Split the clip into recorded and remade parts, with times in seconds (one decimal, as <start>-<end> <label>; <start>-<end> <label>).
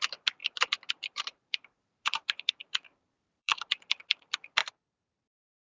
0.0-0.4 recorded; 0.4-3.9 remade; 3.9-4.6 recorded; 4.6-5.8 remade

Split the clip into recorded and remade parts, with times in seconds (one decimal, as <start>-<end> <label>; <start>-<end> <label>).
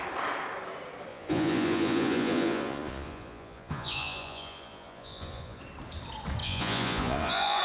0.0-1.1 recorded; 1.1-5.6 remade; 5.6-6.4 recorded; 6.4-7.6 remade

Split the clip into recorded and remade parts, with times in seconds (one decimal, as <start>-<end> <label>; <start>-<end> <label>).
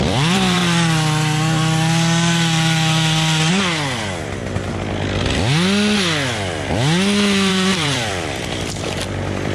0.0-0.6 remade; 0.6-3.5 recorded; 3.5-4.4 remade; 4.4-7.5 recorded; 7.5-9.5 remade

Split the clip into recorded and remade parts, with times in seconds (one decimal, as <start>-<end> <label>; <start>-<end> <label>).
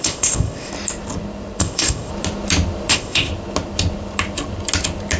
0.0-0.7 remade; 0.7-1.6 recorded; 1.6-2.1 remade; 2.1-2.9 recorded; 2.9-3.3 remade; 3.3-5.2 recorded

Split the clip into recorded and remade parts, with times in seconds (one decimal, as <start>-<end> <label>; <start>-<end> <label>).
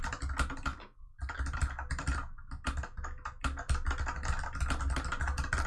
0.0-0.7 recorded; 0.7-1.7 remade; 1.7-5.7 recorded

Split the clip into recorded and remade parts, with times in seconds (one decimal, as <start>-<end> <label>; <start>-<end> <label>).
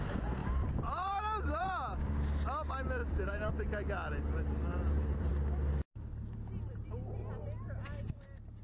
0.0-0.4 recorded; 0.4-2.1 remade; 2.1-3.0 recorded; 3.0-3.5 remade; 3.5-4.7 recorded; 4.7-5.3 remade; 5.3-8.6 recorded